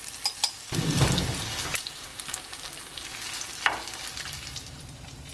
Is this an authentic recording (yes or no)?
yes